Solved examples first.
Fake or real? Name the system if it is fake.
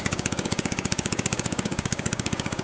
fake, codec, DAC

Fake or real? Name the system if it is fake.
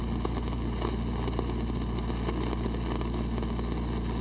real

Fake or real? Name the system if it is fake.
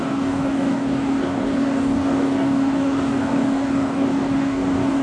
fake, codec, DAC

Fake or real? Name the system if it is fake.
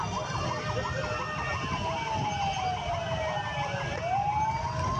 real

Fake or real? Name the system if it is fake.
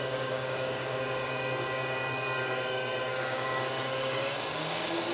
fake, codec, DAC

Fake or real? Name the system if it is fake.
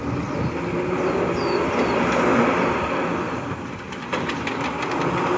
real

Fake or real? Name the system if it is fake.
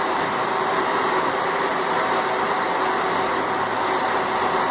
real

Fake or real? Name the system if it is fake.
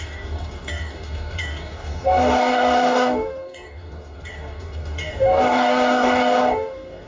fake, codec, DAC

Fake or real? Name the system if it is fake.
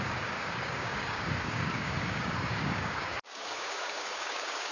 fake, codec, DAC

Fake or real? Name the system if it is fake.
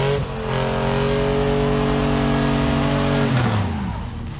real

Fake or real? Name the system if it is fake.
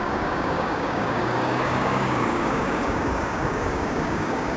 fake, codec, DAC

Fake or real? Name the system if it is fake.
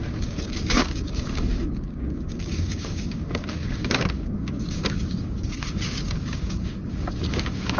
fake, codec, DAC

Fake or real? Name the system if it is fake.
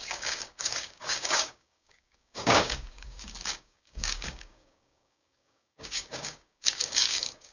fake, codec, DAC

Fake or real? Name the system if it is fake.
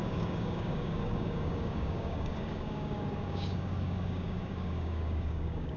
fake, codec, DAC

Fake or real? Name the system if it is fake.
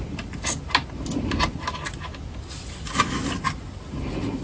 real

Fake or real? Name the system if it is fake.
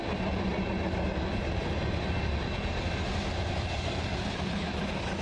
real